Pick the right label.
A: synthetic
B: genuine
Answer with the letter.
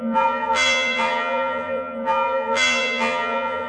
A